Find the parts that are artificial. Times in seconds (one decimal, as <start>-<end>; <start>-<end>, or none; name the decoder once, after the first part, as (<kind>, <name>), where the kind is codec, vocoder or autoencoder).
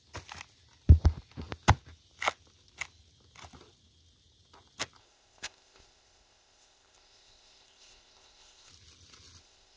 5.0-8.7 (codec, ZipCodec); 9.4-9.8